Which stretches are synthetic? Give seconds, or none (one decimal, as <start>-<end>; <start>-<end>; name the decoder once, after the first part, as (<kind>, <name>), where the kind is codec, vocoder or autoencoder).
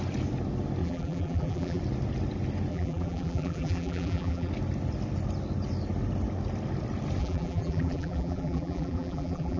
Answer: 0.8-1.8 (vocoder, BigVGAN v2); 2.7-4.5; 7.2-9.6